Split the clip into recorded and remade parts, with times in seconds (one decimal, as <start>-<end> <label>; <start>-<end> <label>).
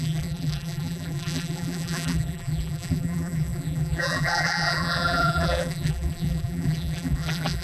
0.0-7.6 remade